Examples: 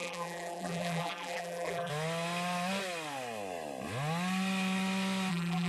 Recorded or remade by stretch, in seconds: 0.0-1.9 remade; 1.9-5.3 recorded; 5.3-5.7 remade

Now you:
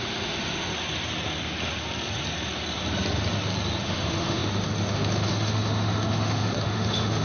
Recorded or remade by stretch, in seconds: 0.0-0.7 remade; 0.7-3.8 recorded; 3.8-7.2 remade

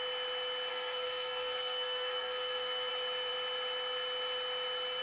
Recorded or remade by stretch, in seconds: 0.0-0.7 recorded; 0.7-2.9 remade; 2.9-5.0 recorded

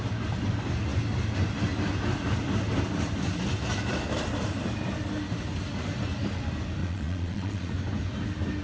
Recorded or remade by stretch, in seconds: 0.0-6.8 recorded; 6.8-7.7 remade; 7.7-8.6 recorded